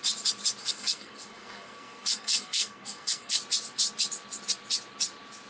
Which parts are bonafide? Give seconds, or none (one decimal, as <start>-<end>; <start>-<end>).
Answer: 0.0-0.6; 3.4-5.5